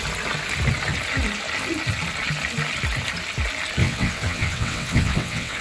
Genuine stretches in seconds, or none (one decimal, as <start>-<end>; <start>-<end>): 0.0-3.8